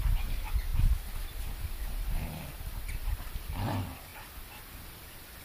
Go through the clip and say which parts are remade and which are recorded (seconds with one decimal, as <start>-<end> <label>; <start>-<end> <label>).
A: 0.0-5.4 recorded